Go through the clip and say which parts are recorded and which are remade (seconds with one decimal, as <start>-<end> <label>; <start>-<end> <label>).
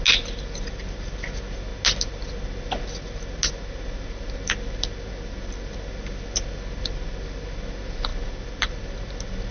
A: 0.0-9.5 recorded